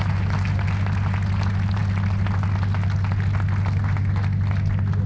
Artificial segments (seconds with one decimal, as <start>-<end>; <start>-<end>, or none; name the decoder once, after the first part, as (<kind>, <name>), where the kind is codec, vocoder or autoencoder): none